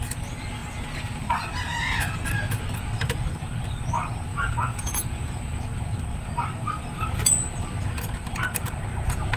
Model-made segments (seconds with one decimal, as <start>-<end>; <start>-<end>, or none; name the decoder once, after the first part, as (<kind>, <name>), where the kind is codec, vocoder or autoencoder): 4.3-5.6 (vocoder, Vocos)